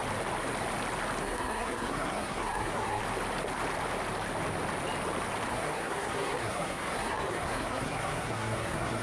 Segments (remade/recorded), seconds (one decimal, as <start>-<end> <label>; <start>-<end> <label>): 0.0-1.2 recorded; 1.2-3.0 remade; 3.0-5.5 recorded; 5.5-9.0 remade